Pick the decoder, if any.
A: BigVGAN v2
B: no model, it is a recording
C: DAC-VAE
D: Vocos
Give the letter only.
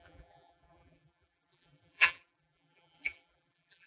A